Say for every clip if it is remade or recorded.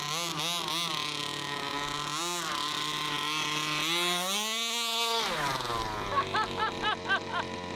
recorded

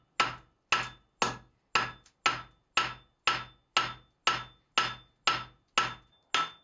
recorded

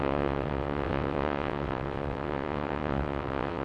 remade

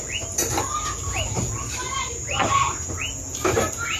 recorded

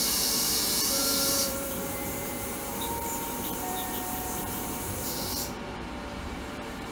remade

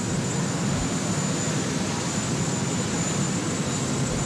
remade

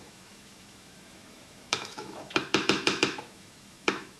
remade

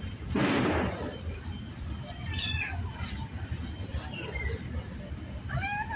recorded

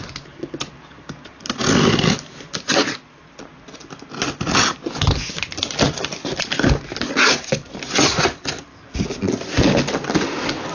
recorded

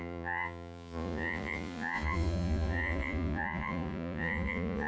remade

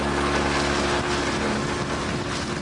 recorded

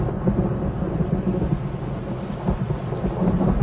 recorded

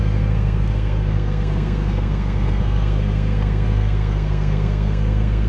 remade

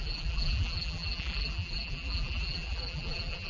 remade